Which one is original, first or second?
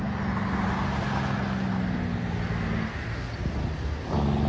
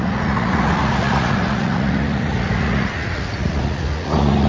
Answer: first